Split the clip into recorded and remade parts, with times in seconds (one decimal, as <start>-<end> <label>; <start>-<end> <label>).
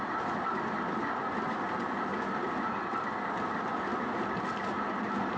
0.0-5.4 recorded